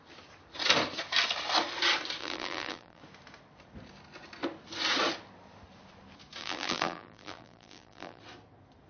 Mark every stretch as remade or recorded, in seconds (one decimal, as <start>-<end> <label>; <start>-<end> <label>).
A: 0.0-2.2 recorded; 2.2-3.0 remade; 3.0-6.4 recorded; 6.4-8.2 remade; 8.2-8.9 recorded